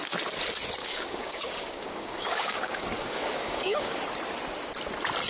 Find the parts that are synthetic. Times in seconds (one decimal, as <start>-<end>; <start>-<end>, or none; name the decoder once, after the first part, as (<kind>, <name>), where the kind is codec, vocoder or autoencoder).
0.8-4.0 (codec, DAC)